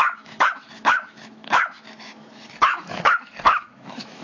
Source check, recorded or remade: remade